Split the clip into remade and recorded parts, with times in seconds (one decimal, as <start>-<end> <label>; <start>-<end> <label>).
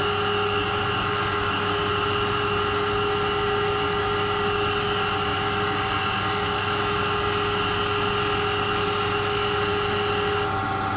0.0-11.0 recorded